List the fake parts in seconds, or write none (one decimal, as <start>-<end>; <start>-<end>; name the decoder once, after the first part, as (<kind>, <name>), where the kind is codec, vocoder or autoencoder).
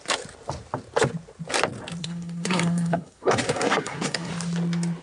2.0-4.3 (codec, SNAC)